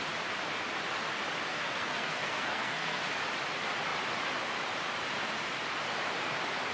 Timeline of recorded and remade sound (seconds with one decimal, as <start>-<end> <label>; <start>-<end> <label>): 0.0-1.5 recorded; 1.5-3.0 remade; 3.0-6.7 recorded